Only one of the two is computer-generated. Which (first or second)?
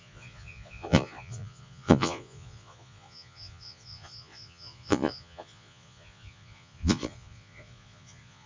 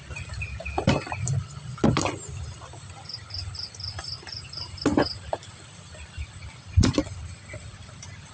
first